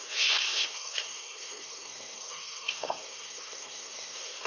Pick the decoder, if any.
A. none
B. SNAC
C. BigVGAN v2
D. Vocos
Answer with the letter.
B